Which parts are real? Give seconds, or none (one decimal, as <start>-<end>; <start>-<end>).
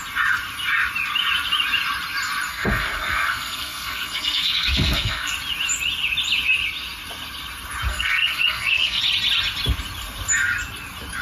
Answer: 0.0-2.5; 5.3-7.9; 9.0-11.2